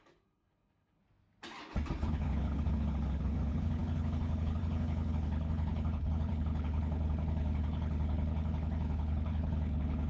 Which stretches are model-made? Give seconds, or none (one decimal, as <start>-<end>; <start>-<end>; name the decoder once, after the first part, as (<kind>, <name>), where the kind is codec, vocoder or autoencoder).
0.0-1.0 (codec, HILCodec); 2.0-10.1